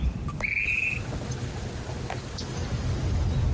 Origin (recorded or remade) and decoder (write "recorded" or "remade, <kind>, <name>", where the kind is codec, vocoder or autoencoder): recorded